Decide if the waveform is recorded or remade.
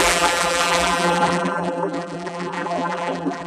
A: remade